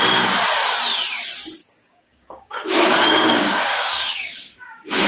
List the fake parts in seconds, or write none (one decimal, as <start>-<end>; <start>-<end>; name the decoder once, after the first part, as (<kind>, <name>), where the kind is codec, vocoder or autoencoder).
1.6-5.1 (codec, DAC)